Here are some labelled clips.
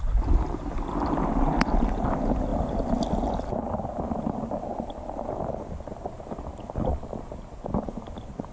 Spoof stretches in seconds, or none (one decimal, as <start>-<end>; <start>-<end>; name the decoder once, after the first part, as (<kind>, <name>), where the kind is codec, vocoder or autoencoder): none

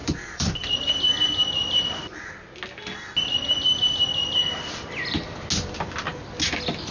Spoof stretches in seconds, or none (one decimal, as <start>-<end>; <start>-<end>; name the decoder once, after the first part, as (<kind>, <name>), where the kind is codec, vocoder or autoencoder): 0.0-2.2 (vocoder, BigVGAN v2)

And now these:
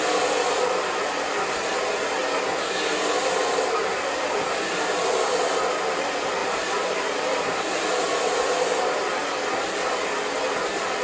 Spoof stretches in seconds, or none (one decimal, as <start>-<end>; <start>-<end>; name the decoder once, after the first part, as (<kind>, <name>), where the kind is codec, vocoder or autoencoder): 6.4-8.1 (vocoder, BigVGAN v2)